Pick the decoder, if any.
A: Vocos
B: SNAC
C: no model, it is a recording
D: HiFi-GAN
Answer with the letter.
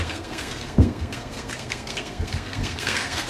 B